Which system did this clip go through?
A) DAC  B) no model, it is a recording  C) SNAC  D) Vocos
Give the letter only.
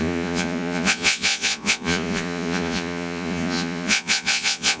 D